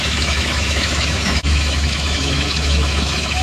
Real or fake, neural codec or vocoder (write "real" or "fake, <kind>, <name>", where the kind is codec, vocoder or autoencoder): fake, autoencoder, DAC-VAE